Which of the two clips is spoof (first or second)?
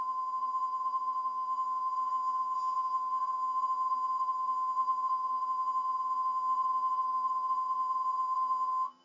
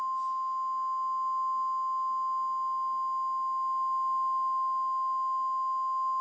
first